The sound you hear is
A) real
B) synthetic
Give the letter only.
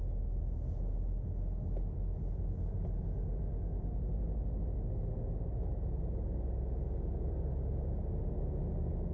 A